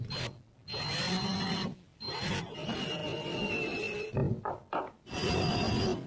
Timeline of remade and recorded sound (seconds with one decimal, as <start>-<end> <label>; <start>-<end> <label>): 0.0-6.1 recorded